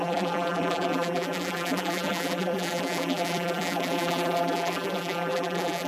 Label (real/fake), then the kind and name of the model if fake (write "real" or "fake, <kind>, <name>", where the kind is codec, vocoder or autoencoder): fake, vocoder, BigVGAN v2